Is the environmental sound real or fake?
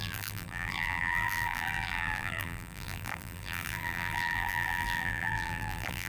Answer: fake